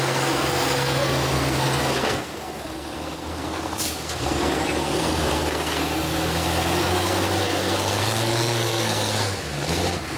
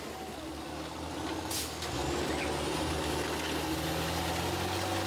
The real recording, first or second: second